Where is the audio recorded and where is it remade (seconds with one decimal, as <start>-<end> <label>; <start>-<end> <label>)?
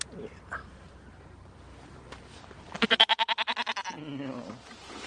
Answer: 0.0-5.1 recorded